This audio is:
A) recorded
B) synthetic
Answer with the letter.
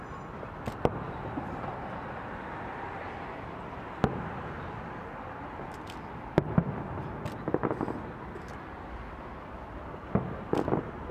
A